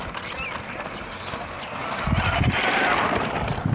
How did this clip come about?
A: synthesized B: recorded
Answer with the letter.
B